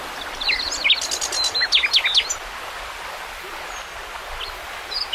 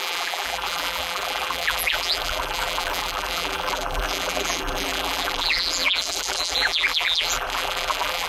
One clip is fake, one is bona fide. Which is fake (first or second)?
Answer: second